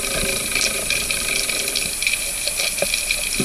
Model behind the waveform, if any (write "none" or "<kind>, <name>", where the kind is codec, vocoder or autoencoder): none